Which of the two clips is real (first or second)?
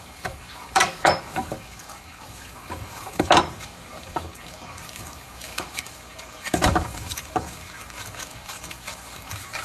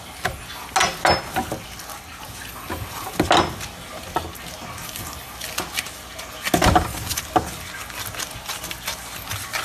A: second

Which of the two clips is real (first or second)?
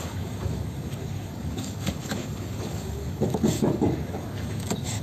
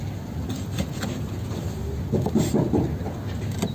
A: second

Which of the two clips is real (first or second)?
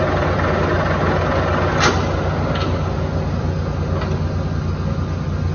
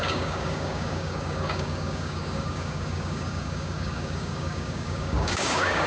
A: first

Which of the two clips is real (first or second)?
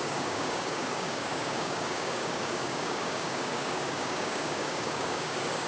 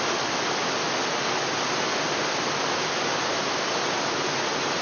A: second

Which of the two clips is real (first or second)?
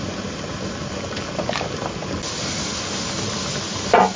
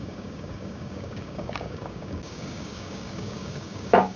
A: first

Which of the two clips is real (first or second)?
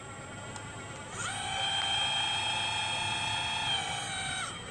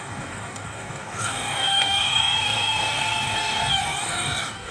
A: first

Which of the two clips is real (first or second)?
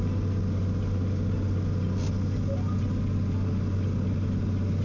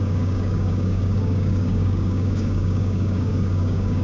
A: first